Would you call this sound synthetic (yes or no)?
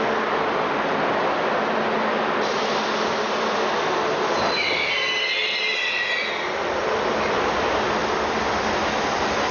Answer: no